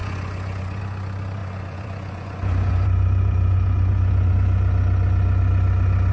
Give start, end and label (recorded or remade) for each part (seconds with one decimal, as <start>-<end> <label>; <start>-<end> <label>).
0.0-0.8 remade; 0.8-1.4 recorded; 1.4-4.3 remade; 4.3-6.1 recorded